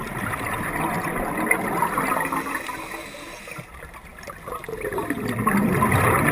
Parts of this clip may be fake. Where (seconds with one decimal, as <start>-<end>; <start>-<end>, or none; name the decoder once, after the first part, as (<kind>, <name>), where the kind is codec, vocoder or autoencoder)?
0.0-0.7 (vocoder, BigVGAN v2); 4.1-6.3